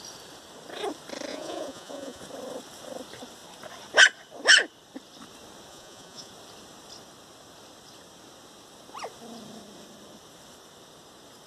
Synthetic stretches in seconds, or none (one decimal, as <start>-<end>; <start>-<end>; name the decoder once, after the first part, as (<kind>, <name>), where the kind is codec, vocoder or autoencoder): 1.3-2.2 (vocoder, Vocos); 5.7-6.3